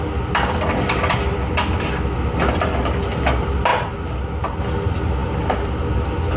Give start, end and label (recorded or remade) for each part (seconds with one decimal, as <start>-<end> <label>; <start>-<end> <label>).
0.0-5.2 recorded; 5.2-5.9 remade; 5.9-6.4 recorded